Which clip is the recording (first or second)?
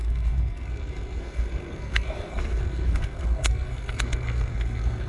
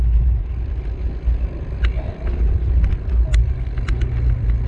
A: second